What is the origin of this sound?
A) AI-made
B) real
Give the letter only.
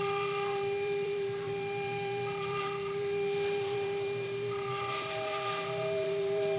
A